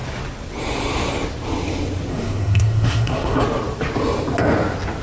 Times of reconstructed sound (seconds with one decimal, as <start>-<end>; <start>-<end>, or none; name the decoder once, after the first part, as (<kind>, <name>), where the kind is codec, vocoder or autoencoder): 2.1-3.4 (codec, SNAC)